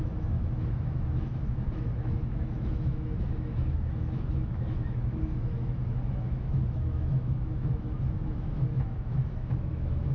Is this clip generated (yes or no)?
yes